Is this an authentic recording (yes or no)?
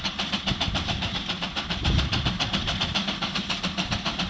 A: no